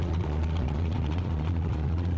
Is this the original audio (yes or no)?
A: no